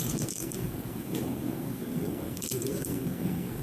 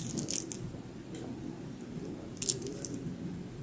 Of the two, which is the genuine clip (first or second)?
second